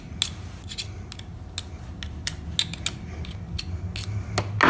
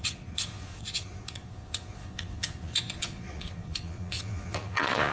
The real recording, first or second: first